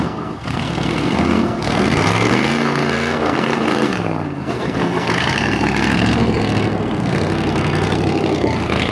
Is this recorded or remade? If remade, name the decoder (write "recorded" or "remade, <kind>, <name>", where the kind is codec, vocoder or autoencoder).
remade, codec, SNAC